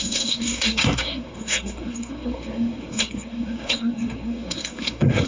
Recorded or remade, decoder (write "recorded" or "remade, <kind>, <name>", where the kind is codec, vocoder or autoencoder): remade, codec, SNAC